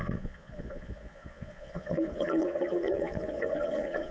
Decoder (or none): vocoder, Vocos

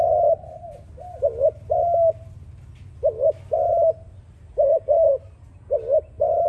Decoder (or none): none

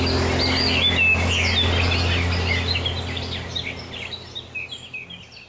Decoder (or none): none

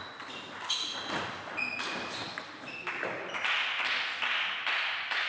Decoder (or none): none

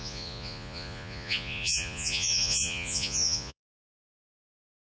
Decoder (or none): vocoder, Vocos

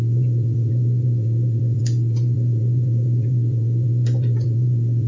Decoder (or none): vocoder, Vocos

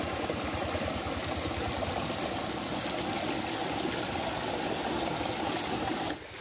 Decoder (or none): none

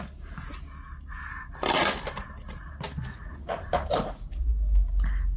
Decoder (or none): none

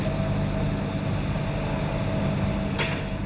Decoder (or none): none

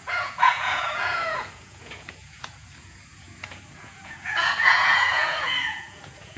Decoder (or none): vocoder, Vocos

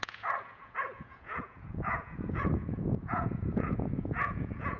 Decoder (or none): vocoder, Vocos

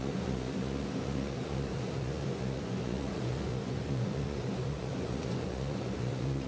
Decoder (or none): vocoder, Vocos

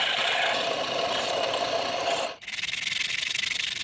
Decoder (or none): none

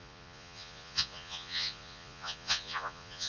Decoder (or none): vocoder, Vocos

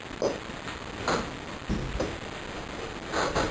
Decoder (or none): none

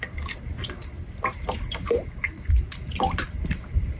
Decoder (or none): none